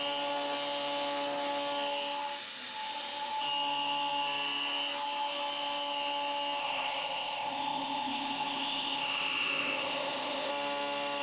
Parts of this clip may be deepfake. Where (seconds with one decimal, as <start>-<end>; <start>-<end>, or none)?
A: 6.6-10.5